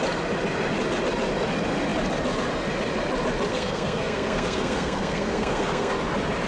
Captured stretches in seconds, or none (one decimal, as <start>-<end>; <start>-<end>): 0.0-3.5; 5.9-6.5